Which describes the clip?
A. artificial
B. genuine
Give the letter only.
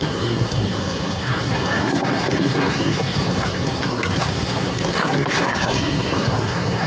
A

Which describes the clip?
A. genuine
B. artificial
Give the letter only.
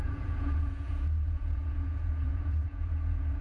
B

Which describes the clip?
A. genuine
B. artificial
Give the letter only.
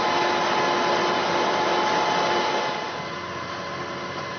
A